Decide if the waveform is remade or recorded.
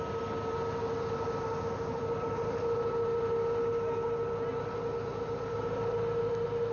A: recorded